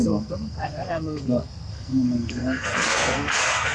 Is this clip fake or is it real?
fake